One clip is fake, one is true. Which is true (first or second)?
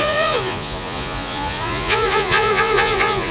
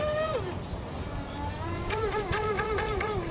second